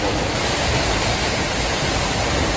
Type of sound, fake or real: real